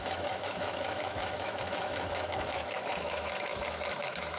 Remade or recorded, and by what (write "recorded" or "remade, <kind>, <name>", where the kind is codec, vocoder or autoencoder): remade, autoencoder, DAC-VAE